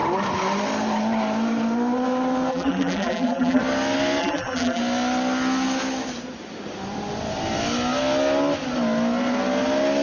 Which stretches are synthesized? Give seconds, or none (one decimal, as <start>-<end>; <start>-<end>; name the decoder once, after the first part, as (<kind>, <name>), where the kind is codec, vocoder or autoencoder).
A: 2.5-3.6 (vocoder, BigVGAN v2); 4.2-4.8